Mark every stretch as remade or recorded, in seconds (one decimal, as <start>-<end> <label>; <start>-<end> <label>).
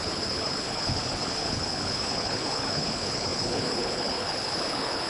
0.0-5.1 remade